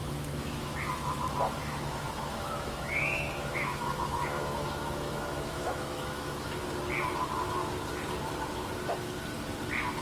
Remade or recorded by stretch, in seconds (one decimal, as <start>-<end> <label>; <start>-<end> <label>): 0.0-0.7 remade; 0.7-1.6 recorded; 1.6-6.6 remade; 6.6-10.0 recorded